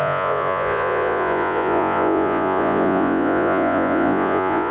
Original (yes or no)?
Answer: no